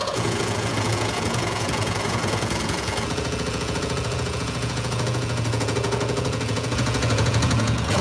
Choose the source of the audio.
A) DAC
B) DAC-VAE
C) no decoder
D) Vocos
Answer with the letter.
D